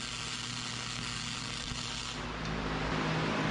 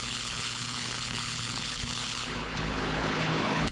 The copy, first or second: second